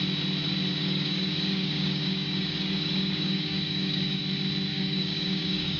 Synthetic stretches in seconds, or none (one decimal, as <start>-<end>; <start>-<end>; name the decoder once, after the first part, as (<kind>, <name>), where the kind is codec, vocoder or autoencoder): 0.7-4.2 (codec, DAC); 4.7-5.8